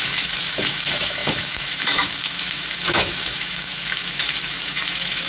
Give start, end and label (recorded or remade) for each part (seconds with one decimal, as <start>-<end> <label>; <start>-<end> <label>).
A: 0.0-5.3 remade